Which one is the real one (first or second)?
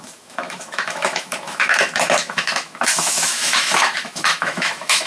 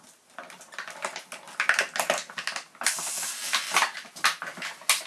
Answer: second